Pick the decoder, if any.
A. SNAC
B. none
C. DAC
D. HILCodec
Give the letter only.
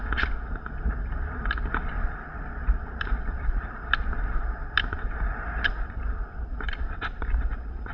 B